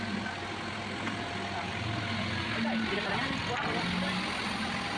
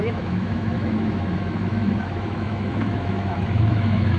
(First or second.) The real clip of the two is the first